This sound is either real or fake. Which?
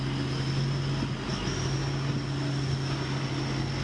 real